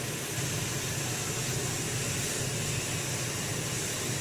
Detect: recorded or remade recorded